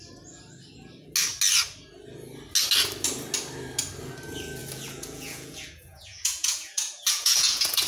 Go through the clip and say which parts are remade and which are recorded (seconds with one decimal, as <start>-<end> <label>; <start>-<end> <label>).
0.0-4.6 recorded; 4.6-7.9 remade